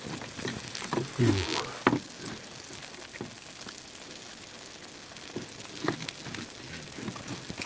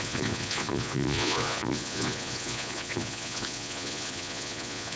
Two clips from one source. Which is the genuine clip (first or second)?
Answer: first